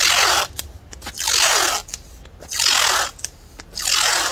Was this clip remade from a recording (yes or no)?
no